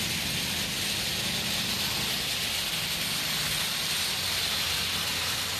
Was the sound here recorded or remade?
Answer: recorded